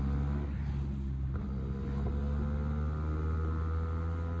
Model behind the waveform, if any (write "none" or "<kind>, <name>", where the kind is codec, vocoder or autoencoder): none